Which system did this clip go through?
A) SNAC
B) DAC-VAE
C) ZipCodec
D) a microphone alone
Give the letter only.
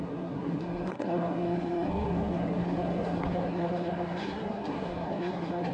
A